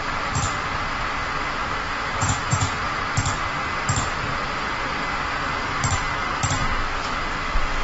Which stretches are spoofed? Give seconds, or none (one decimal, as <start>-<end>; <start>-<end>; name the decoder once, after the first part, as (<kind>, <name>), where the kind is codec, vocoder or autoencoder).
2.2-2.9 (vocoder, Vocos)